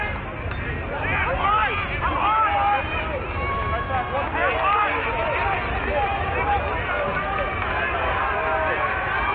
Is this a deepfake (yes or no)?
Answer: no